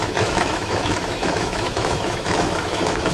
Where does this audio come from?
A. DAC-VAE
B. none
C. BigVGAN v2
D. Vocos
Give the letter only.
A